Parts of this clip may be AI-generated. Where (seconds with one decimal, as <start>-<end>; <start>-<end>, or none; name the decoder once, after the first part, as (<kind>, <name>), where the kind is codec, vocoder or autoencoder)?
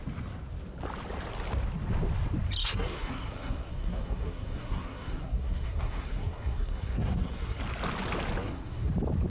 2.6-7.6 (codec, SNAC); 8.4-8.9